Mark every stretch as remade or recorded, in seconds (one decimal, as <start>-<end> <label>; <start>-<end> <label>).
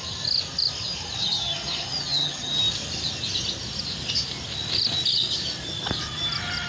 0.0-1.2 recorded; 1.2-2.6 remade; 2.6-6.7 recorded